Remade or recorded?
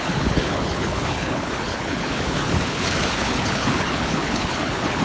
remade